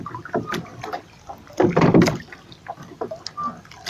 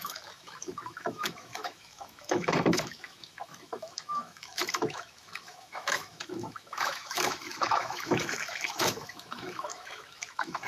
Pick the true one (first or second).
first